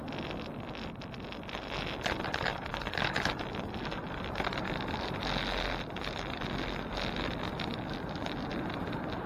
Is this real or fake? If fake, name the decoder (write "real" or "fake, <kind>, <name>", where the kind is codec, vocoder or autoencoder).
real